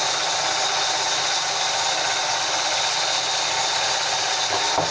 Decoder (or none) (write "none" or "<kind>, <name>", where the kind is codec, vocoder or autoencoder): none